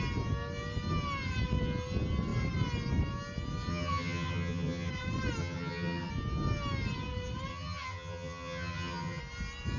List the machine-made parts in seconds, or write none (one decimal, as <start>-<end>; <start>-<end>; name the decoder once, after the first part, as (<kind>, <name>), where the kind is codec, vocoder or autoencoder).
3.7-4.9 (vocoder, HiFi-GAN); 5.4-6.1; 7.5-9.2